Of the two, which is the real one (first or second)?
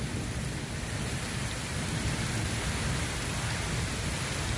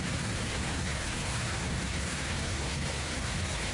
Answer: first